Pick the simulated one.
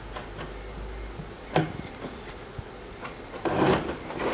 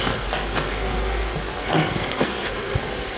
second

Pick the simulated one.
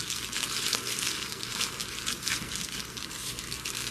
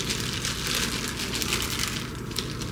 first